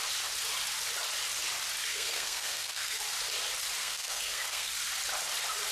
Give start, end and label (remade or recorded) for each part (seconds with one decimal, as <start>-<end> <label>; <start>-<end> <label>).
0.0-1.9 recorded; 1.9-3.0 remade; 3.0-3.8 recorded; 3.8-4.7 remade; 4.7-5.7 recorded